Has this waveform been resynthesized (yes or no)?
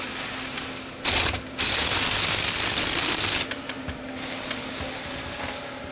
no